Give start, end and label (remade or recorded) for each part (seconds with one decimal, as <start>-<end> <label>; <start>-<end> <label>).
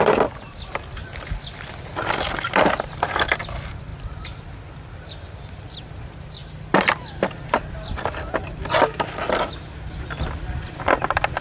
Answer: 0.0-11.4 recorded